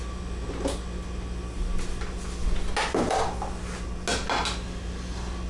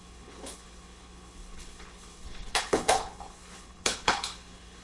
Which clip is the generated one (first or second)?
second